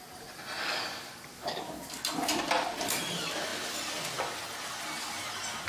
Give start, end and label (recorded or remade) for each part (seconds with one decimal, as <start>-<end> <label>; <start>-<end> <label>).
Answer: 0.0-0.6 recorded; 0.6-1.9 remade; 1.9-5.7 recorded